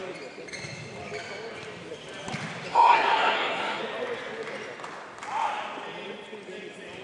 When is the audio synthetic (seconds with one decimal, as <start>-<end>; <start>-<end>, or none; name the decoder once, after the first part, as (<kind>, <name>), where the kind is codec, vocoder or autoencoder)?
2.7-3.8 (codec, SNAC)